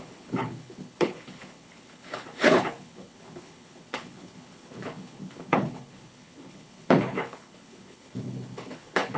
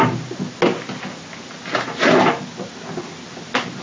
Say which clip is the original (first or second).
second